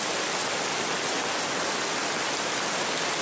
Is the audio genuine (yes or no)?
yes